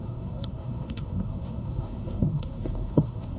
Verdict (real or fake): fake